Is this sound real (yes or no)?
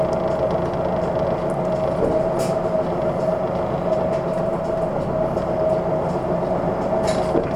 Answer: yes